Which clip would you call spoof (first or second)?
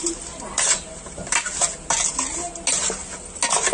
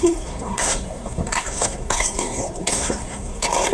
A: second